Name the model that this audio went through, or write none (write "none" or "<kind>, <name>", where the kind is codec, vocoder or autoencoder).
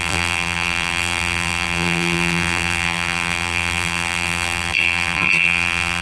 vocoder, BigVGAN v2